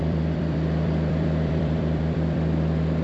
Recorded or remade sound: remade